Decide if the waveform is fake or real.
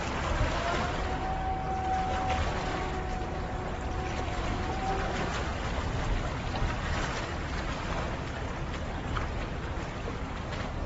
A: real